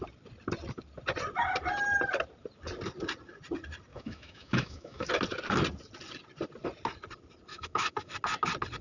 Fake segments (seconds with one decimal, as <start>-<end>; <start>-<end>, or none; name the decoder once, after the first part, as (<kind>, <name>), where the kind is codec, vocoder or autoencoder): 3.9-5.1 (autoencoder, DAC-VAE); 7.5-8.1